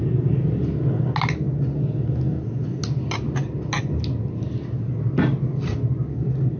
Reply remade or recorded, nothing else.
recorded